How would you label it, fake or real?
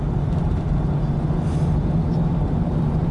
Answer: real